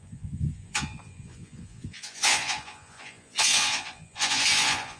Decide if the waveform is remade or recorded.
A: remade